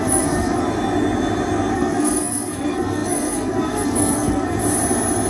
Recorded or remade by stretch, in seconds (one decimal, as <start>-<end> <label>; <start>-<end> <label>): 0.0-0.6 remade; 0.6-1.7 recorded; 1.7-4.6 remade; 4.6-5.3 recorded